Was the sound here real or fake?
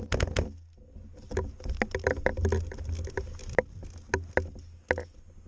real